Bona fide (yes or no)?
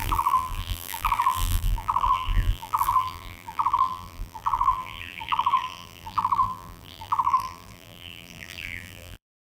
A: no